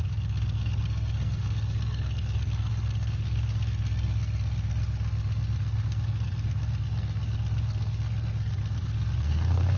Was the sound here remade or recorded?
remade